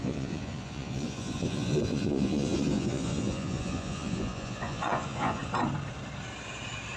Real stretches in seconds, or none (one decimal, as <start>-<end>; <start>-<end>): 5.4-7.0